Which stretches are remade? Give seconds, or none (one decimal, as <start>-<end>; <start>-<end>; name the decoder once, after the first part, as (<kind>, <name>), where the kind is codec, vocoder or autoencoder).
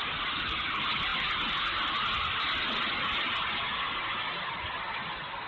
none